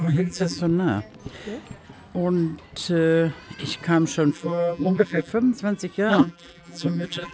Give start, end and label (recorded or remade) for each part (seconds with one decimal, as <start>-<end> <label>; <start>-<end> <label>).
0.0-0.6 remade; 0.6-4.3 recorded; 4.3-5.3 remade; 5.3-6.1 recorded; 6.1-7.3 remade